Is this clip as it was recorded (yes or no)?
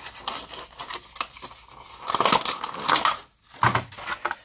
yes